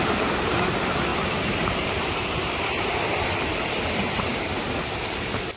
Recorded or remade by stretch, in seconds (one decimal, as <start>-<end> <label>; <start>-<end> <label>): 0.0-1.1 recorded; 1.1-3.2 remade; 3.2-4.3 recorded; 4.3-5.0 remade; 5.0-5.6 recorded